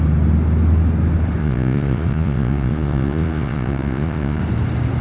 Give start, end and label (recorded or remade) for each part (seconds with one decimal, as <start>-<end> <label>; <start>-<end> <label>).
0.0-1.4 recorded; 1.4-4.4 remade; 4.4-5.0 recorded